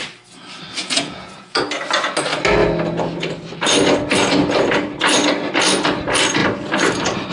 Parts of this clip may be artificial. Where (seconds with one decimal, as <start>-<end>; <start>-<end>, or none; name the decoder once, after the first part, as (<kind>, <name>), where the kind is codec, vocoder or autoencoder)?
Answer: 0.8-1.6 (vocoder, Vocos)